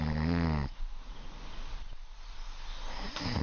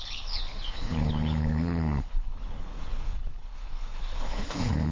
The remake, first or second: second